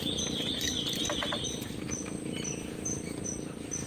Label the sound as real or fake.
real